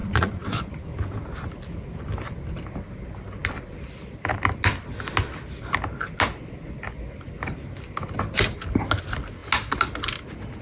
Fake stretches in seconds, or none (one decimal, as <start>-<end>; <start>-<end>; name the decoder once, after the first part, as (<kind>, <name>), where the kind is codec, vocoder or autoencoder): 0.0-0.7 (vocoder, Vocos)